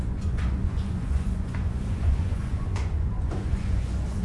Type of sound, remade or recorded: remade